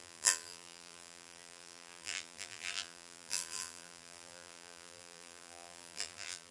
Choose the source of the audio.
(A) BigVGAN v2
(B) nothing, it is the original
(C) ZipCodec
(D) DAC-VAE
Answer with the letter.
A